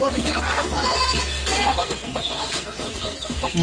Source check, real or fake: fake